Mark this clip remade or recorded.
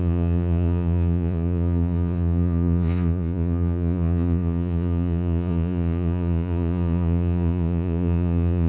remade